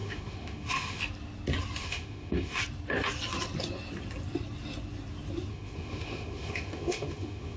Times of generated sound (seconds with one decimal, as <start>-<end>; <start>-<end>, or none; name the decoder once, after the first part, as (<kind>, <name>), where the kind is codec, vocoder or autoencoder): 0.0-1.0 (autoencoder, DAC-VAE); 1.8-2.6; 5.5-7.6